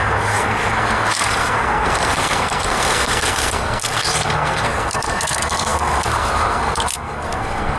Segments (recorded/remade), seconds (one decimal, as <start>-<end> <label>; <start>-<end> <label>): 0.0-7.8 remade